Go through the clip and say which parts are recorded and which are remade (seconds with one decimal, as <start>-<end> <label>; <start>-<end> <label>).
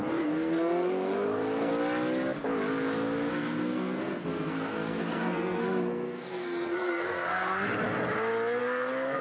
0.0-1.7 remade; 1.7-3.3 recorded; 3.3-7.7 remade; 7.7-8.6 recorded; 8.6-9.2 remade